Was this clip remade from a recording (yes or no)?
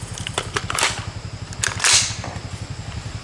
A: no